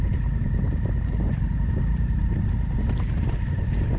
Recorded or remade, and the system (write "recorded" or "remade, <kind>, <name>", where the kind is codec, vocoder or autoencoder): recorded